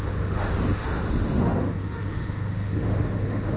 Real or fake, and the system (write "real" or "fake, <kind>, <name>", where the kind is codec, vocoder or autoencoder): fake, autoencoder, DAC-VAE